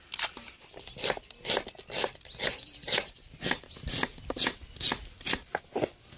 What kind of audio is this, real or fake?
real